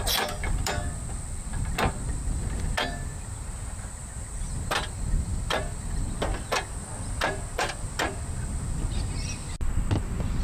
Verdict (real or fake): real